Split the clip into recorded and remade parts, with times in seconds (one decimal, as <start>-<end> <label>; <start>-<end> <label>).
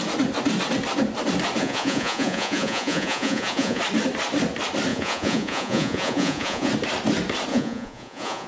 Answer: 0.0-1.6 recorded; 1.6-3.8 remade; 3.8-4.9 recorded; 4.9-6.7 remade; 6.7-7.5 recorded; 7.5-8.5 remade